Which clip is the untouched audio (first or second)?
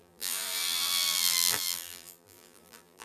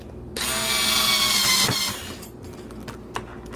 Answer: second